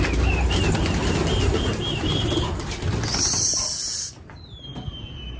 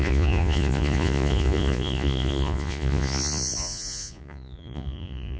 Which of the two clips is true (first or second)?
first